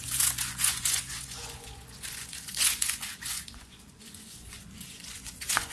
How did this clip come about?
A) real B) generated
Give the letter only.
B